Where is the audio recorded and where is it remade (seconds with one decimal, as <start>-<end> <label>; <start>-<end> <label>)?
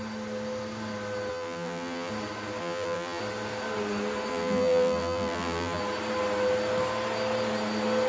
0.0-1.3 recorded; 1.3-2.1 remade; 2.1-2.6 recorded; 2.6-3.2 remade; 3.2-4.3 recorded; 4.3-5.8 remade; 5.8-8.1 recorded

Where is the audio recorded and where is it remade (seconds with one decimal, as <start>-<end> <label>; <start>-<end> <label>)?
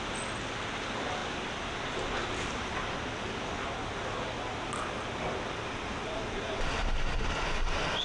0.0-6.8 recorded; 6.8-8.0 remade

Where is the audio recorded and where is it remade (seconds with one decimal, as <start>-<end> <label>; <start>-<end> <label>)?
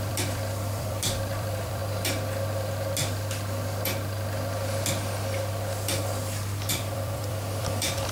0.0-1.8 remade; 1.8-6.7 recorded; 6.7-8.1 remade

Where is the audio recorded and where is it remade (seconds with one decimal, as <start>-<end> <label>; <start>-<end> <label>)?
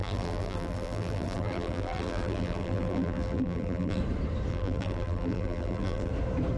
0.0-4.0 remade; 4.0-4.5 recorded; 4.5-6.1 remade; 6.1-6.6 recorded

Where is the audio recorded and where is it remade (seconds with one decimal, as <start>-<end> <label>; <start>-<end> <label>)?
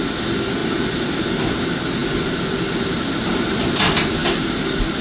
0.0-0.6 recorded; 0.6-1.5 remade; 1.5-5.0 recorded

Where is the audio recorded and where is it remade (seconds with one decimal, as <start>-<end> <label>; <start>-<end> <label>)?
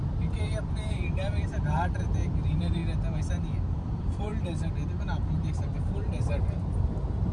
0.0-2.8 remade; 2.8-3.7 recorded; 3.7-4.3 remade; 4.3-5.0 recorded; 5.0-7.3 remade